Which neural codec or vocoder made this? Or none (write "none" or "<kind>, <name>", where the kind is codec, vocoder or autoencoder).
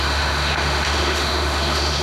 autoencoder, DAC-VAE